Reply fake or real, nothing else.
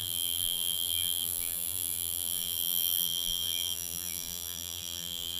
fake